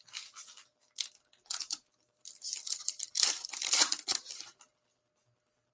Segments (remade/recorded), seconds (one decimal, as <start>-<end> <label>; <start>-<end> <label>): 0.0-2.2 recorded; 2.2-4.7 remade; 4.7-5.7 recorded